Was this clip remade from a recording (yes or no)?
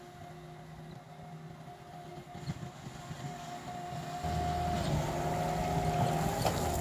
no